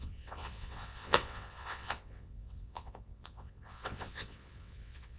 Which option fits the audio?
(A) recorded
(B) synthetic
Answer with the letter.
B